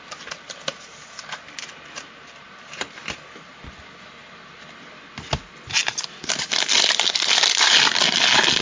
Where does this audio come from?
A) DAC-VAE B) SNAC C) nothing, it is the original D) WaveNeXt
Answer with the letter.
C